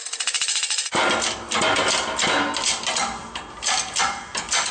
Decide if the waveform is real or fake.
real